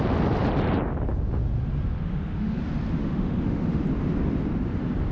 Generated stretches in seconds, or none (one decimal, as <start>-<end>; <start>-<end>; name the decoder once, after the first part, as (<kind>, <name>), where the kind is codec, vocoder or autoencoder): 1.9-2.6 (autoencoder, DAC-VAE); 3.0-3.8